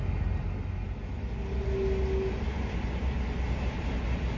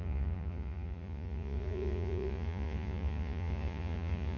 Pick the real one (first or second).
first